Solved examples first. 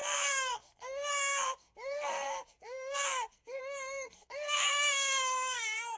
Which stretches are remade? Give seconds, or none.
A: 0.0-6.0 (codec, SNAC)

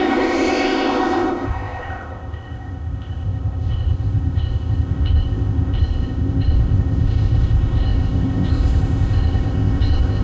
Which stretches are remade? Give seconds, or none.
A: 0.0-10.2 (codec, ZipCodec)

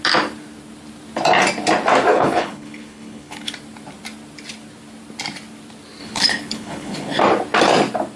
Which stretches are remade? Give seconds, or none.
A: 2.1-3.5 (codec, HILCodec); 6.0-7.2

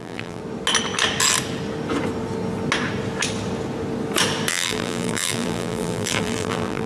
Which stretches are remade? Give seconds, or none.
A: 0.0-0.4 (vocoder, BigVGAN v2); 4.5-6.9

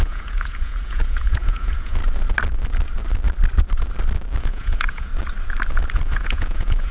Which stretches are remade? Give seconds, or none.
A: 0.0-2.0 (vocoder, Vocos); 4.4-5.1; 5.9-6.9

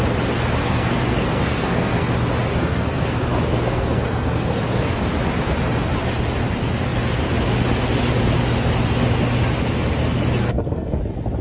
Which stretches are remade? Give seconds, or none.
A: 0.6-2.1 (codec, SNAC); 2.5-5.0; 10.4-11.0

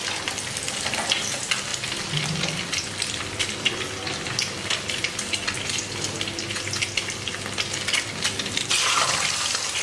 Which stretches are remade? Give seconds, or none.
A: none

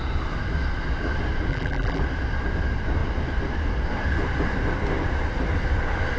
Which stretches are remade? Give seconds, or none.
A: 1.5-2.0 (vocoder, BigVGAN v2)